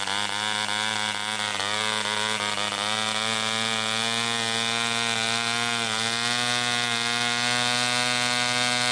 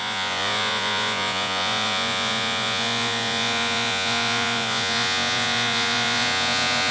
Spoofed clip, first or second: second